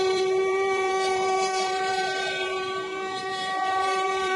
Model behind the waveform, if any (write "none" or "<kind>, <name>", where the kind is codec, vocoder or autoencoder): vocoder, BigVGAN v2